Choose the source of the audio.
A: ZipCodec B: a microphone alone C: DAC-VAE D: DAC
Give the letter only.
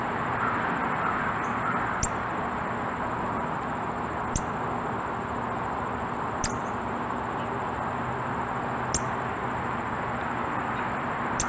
B